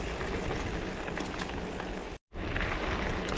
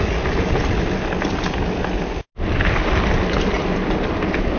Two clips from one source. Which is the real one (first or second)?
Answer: first